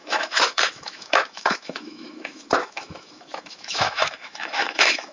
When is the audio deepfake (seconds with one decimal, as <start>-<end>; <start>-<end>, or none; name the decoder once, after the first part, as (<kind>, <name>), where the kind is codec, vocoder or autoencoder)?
0.0-5.1 (autoencoder, DAC-VAE)